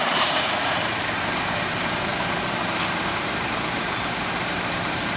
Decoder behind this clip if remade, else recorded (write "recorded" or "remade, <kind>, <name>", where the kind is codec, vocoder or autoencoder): remade, vocoder, BigVGAN v2